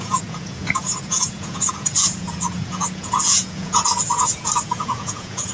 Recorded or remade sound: remade